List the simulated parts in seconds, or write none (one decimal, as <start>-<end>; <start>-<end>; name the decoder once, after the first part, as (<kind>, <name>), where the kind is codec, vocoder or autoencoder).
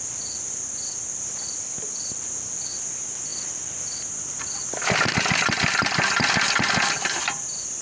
none